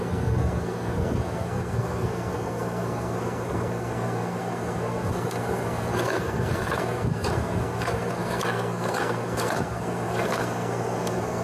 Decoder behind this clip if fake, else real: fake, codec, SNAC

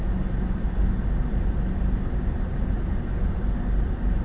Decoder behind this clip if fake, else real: real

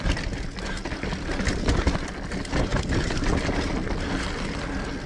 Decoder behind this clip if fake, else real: real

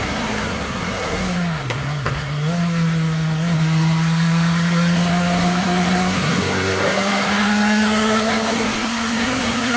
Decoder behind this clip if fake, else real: fake, codec, SNAC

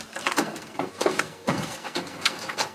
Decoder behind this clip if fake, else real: fake, codec, SNAC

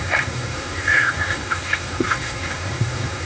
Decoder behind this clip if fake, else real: fake, codec, SNAC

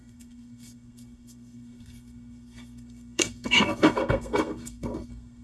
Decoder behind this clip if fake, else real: fake, codec, SNAC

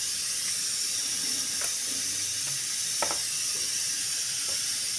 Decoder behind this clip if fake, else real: real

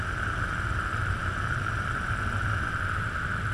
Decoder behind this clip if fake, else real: real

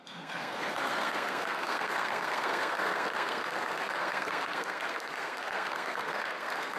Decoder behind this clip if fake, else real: fake, codec, SNAC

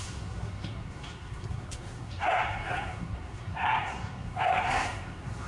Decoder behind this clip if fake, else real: fake, codec, SNAC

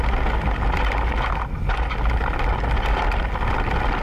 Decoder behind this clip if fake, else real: real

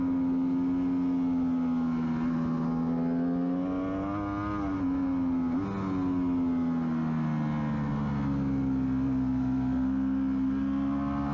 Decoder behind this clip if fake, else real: real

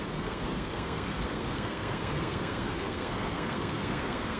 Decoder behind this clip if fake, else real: fake, codec, SNAC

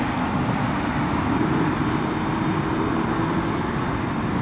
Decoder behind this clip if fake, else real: real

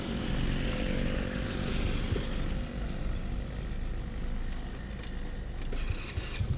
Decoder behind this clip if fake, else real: real